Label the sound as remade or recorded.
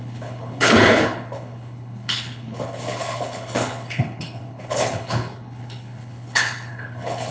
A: remade